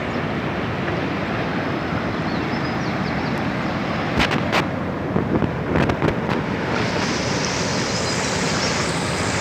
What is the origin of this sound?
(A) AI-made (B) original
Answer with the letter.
B